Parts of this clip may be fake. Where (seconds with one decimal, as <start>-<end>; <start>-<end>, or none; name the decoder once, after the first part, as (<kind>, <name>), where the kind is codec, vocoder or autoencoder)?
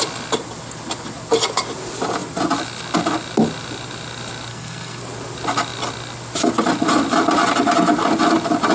4.5-5.0 (codec, SNAC)